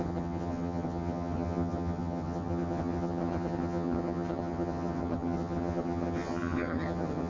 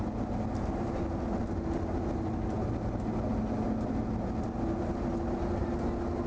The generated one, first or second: first